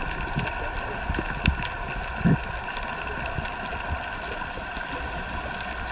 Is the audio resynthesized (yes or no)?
no